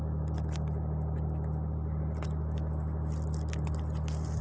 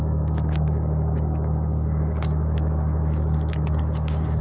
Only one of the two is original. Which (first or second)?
first